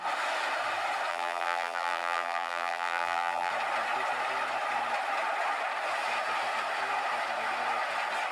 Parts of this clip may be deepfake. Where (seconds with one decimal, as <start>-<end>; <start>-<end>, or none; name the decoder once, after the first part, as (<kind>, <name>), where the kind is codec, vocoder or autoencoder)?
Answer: 1.1-3.5 (vocoder, BigVGAN v2)